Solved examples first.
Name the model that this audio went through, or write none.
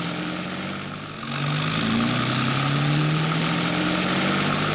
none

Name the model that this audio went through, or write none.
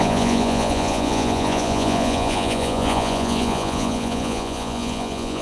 vocoder, Vocos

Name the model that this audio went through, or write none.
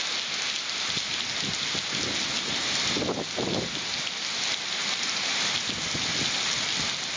none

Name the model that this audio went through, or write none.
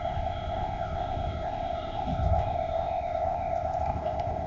codec, ZipCodec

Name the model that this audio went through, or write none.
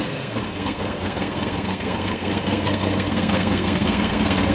codec, SNAC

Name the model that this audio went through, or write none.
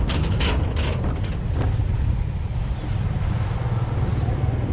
none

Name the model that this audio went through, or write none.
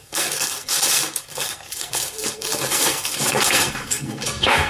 codec, SNAC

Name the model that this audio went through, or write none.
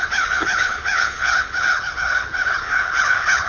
codec, HILCodec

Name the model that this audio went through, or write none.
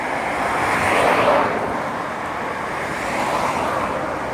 none